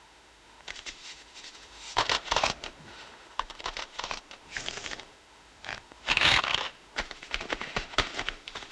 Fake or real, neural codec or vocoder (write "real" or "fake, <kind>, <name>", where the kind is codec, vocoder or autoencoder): fake, autoencoder, DAC-VAE